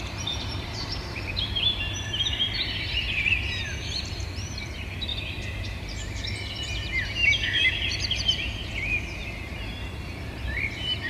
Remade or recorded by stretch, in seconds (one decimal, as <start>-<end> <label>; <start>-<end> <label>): 0.0-5.1 remade; 5.1-5.6 recorded; 5.6-11.1 remade